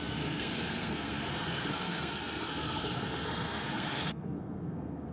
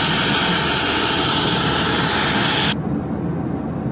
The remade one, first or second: first